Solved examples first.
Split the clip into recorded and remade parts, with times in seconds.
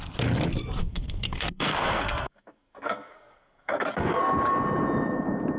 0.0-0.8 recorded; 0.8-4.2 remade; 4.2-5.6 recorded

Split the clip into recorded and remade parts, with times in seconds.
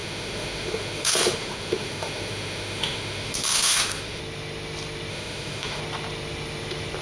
0.0-4.2 remade; 4.2-5.1 recorded; 5.1-5.8 remade; 5.8-7.0 recorded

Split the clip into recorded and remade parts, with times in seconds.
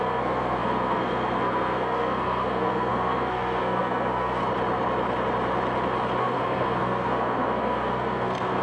0.0-4.4 remade; 4.4-6.2 recorded; 6.2-8.6 remade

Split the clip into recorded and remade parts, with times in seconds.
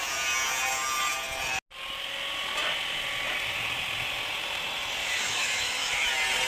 0.0-5.0 recorded; 5.0-6.1 remade; 6.1-6.5 recorded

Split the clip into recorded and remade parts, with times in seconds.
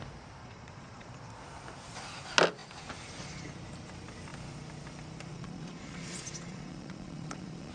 0.0-0.4 recorded; 0.4-1.1 remade; 1.1-5.3 recorded; 5.3-7.7 remade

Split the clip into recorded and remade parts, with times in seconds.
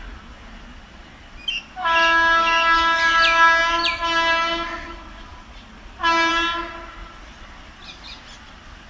0.0-8.9 recorded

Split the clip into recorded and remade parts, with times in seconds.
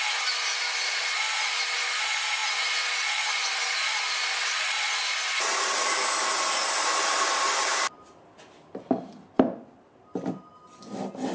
0.0-11.3 recorded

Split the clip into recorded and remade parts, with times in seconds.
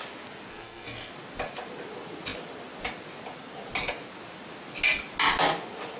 0.0-0.5 recorded; 0.5-1.1 remade; 1.1-6.0 recorded